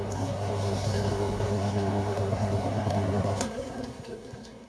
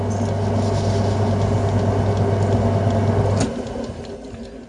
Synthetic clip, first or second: first